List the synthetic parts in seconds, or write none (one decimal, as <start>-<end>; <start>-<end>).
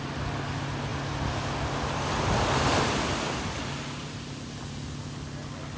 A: none